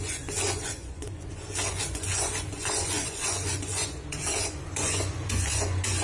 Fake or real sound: fake